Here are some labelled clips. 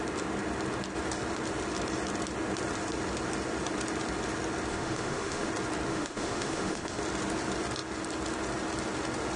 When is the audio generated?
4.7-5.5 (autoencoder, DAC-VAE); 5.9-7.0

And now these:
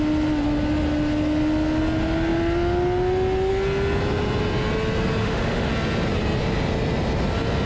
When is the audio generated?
5.2-5.7 (autoencoder, DAC-VAE)

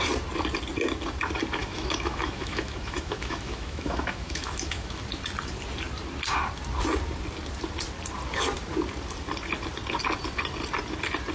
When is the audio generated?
1.6-5.0 (autoencoder, DAC-VAE)

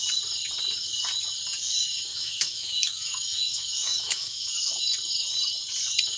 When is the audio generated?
2.1-4.8 (autoencoder, DAC-VAE)

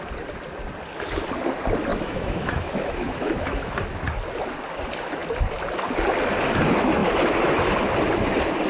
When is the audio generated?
1.9-3.8 (autoencoder, DAC-VAE)

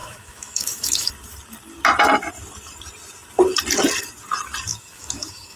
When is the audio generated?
0.0-1.1 (autoencoder, DAC-VAE); 4.7-5.6